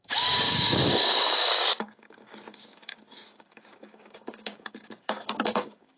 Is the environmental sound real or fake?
fake